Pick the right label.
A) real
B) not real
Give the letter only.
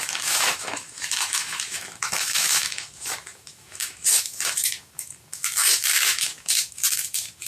B